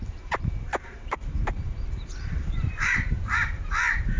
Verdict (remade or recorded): remade